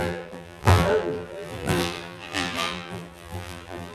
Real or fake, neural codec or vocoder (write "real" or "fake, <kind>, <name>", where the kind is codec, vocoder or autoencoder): fake, vocoder, BigVGAN v2